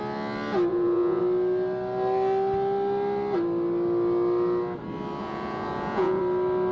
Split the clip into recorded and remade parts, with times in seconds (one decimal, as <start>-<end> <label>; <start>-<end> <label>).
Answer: 0.0-0.7 recorded; 0.7-1.2 remade; 1.2-5.2 recorded; 5.2-6.2 remade; 6.2-6.7 recorded